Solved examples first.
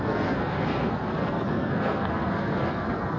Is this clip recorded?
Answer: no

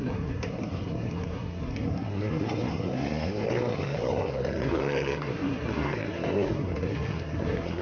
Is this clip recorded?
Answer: no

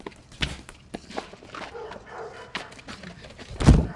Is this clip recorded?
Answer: yes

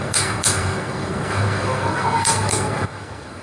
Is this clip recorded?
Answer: no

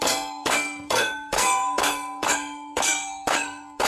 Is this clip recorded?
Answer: no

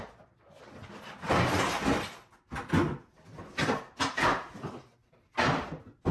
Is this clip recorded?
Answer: yes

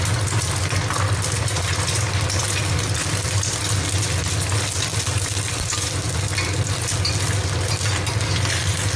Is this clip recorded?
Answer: yes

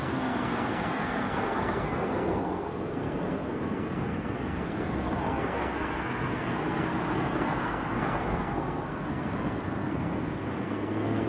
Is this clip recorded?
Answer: no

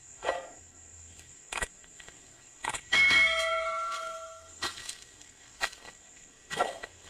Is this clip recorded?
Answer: no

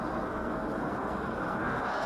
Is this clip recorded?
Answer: no